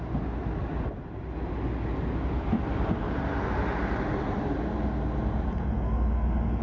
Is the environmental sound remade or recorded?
recorded